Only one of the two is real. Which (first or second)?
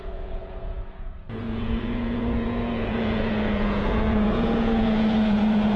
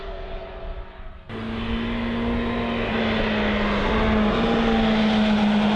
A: second